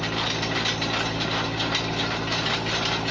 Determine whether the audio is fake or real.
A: real